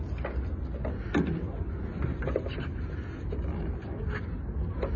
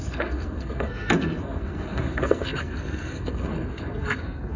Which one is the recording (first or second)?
first